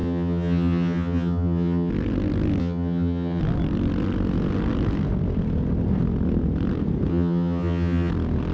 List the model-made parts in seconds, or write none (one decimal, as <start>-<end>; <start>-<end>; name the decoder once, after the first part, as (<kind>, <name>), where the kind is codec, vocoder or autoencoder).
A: 0.0-1.9 (vocoder, HiFi-GAN); 2.6-3.4; 7.1-8.1